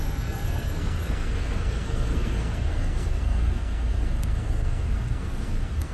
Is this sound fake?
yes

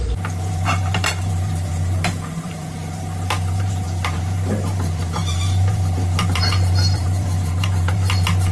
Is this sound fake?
yes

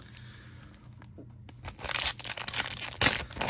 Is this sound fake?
no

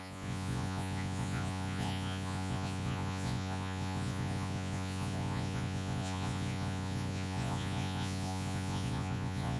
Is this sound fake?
yes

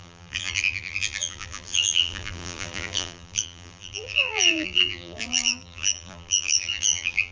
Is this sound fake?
yes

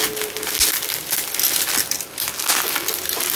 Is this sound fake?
no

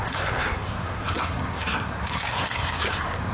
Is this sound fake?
yes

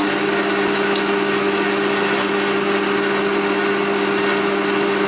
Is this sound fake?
no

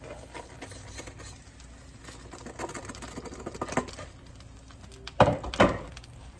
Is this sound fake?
no